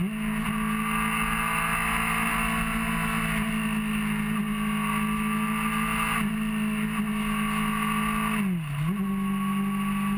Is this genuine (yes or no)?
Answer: yes